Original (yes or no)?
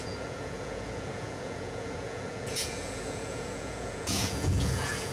no